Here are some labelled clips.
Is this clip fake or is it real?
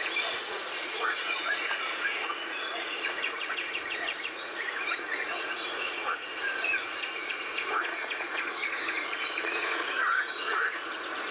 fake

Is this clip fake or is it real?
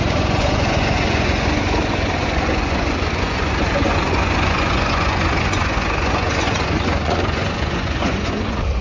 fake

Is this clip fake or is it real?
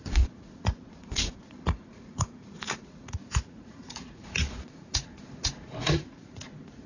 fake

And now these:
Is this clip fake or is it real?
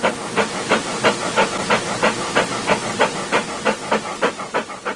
real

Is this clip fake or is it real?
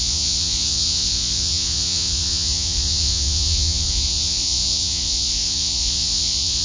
fake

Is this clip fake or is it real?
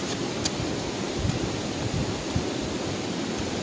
real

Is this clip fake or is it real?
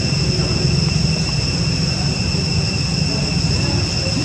real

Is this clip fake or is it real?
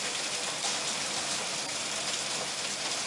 real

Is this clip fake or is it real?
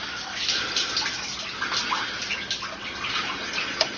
real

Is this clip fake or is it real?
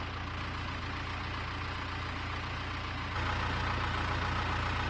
real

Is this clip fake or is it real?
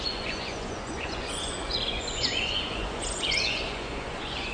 fake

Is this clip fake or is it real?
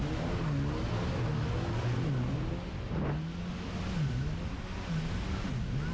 real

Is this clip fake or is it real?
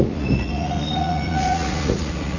fake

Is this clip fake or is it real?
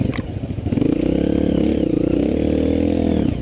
real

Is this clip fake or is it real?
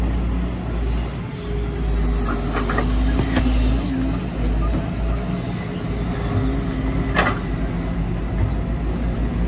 real